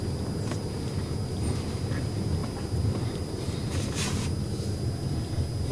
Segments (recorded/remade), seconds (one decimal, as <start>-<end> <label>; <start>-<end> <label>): 0.0-5.7 recorded